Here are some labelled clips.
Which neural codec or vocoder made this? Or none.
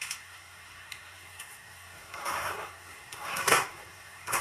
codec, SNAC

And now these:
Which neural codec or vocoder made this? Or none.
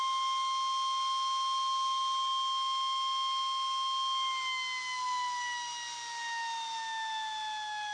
none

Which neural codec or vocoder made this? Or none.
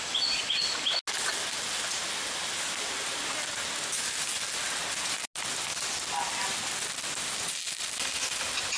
none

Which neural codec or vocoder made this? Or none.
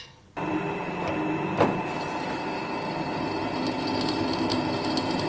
none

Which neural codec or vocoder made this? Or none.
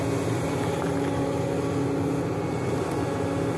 none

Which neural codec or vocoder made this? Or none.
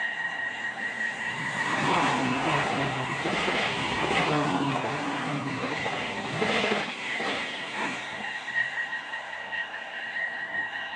codec, SNAC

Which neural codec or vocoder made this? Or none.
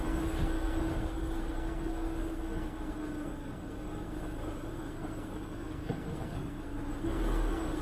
codec, SNAC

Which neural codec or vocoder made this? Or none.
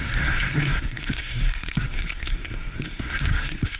codec, SNAC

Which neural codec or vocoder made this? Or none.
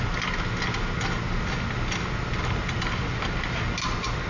none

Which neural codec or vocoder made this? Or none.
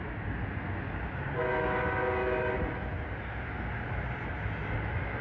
none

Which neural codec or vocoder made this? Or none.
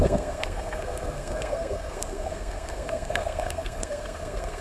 codec, SNAC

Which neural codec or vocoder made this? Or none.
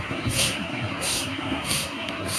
codec, SNAC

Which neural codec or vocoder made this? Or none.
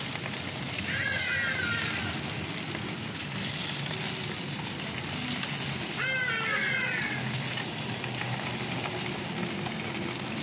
none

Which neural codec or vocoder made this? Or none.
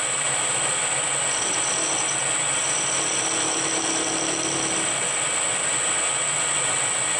none